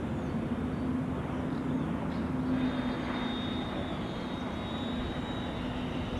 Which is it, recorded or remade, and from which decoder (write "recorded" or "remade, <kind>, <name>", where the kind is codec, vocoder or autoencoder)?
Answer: remade, vocoder, BigVGAN v2